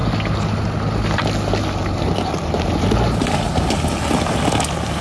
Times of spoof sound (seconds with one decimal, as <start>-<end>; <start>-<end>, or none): none